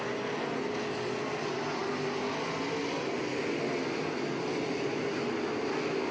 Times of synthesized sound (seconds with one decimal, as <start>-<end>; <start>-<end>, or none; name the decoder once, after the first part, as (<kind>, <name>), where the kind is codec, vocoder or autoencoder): none